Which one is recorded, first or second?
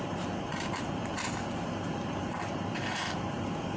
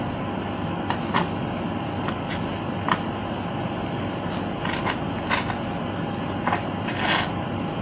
second